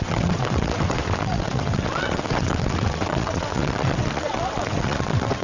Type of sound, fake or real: fake